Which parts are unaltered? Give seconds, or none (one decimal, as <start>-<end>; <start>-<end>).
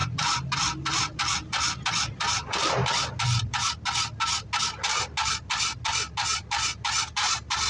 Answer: 0.0-7.7